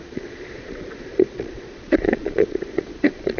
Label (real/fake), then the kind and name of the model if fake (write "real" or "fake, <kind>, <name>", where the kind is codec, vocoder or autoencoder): fake, vocoder, Vocos